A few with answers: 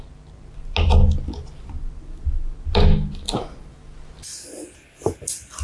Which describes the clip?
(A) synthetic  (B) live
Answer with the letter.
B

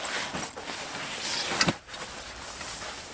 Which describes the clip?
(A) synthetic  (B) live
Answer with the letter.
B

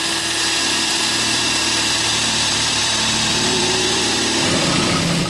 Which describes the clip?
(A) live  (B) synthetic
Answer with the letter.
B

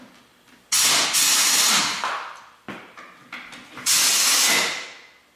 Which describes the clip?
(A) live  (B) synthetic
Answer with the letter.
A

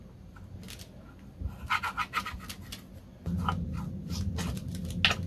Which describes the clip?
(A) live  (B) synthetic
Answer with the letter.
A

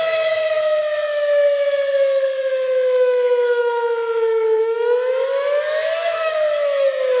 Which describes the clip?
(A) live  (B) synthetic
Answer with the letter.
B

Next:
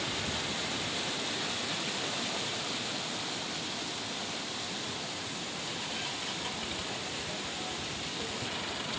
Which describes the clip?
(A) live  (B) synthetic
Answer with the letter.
A